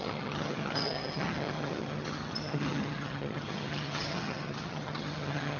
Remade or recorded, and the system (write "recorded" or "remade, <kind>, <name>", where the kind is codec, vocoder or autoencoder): remade, vocoder, HiFi-GAN